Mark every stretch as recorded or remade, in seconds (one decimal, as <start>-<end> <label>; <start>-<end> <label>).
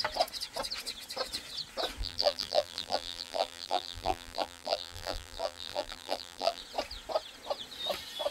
0.0-2.0 recorded; 2.0-6.6 remade; 6.6-8.3 recorded